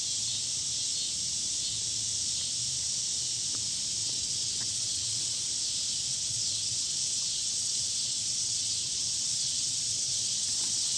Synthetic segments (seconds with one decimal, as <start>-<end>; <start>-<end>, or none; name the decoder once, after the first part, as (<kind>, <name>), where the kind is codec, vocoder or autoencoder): 4.0-5.4 (vocoder, WaveNeXt); 6.1-11.0